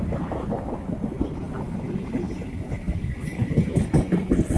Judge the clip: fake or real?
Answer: real